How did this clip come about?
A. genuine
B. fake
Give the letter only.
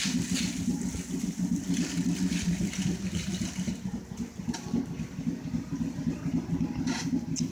B